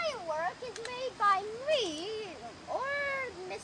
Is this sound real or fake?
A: real